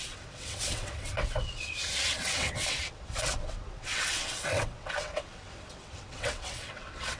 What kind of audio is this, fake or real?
fake